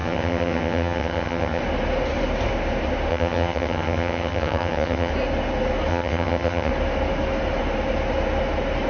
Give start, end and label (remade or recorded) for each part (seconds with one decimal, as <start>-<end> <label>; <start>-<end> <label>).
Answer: 0.0-1.6 remade; 1.6-3.1 recorded; 3.1-5.1 remade; 5.1-5.9 recorded; 5.9-6.7 remade; 6.7-8.9 recorded